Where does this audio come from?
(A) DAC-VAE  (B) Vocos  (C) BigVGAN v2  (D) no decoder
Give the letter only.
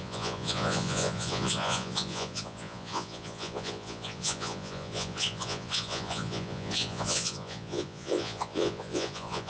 B